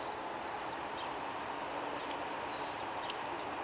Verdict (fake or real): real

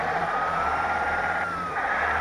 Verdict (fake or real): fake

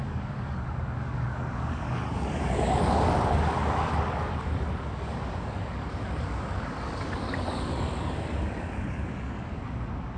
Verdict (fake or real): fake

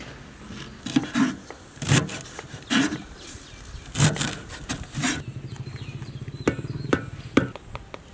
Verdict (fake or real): real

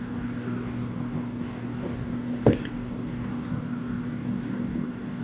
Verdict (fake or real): fake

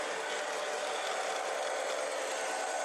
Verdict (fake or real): real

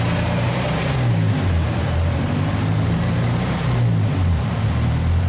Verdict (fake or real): fake